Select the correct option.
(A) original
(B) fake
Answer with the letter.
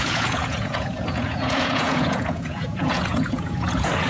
B